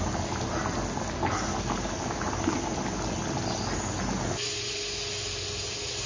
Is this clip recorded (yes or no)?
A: yes